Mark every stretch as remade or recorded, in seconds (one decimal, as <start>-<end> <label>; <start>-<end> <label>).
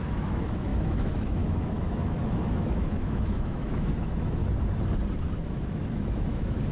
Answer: 0.0-4.4 remade; 4.4-5.2 recorded; 5.2-6.7 remade